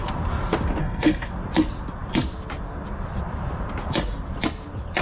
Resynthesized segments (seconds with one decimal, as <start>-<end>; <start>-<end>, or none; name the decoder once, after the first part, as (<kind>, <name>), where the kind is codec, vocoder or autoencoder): 0.8-1.3 (codec, SNAC)